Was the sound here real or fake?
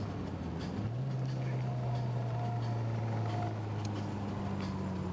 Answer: real